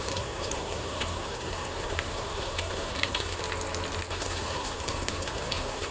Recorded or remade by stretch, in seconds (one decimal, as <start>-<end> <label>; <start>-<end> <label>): 0.0-3.4 remade; 3.4-4.1 recorded; 4.1-5.9 remade